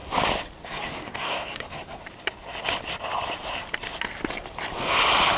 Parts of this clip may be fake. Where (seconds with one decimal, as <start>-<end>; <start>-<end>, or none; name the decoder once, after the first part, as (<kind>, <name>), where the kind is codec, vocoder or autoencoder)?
0.7-2.0 (codec, SNAC)